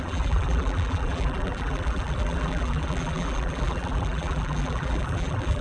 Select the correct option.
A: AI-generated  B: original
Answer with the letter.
A